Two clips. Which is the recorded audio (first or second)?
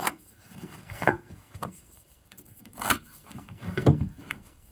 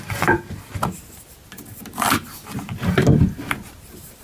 second